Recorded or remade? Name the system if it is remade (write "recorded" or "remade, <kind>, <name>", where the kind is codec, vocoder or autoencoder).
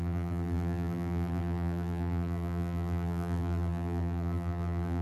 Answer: remade, vocoder, BigVGAN v2